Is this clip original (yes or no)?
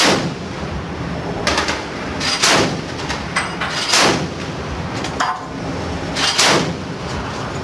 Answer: yes